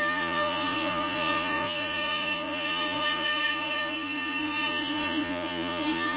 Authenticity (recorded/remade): remade